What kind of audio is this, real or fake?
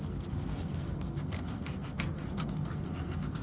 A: fake